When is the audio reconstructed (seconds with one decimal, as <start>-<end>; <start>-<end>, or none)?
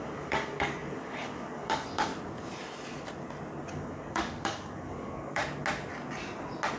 0.0-2.1; 3.7-5.4